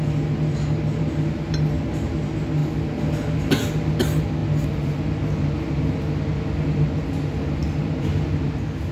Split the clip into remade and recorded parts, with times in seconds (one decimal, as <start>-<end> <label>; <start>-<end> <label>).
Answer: 0.0-8.9 recorded